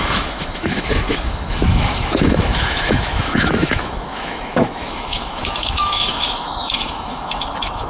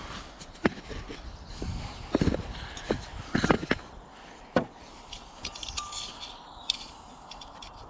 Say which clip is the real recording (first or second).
second